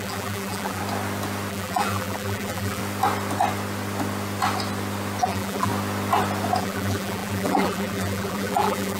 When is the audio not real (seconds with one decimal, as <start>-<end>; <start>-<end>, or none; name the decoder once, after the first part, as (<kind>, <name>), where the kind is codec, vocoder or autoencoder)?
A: 0.0-0.8 (vocoder, BigVGAN v2); 1.5-2.8; 5.2-5.7; 6.6-9.0